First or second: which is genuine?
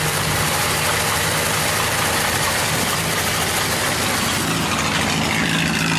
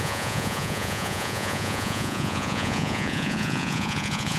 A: first